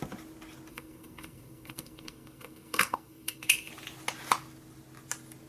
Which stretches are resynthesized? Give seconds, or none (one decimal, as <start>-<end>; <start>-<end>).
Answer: 0.7-3.7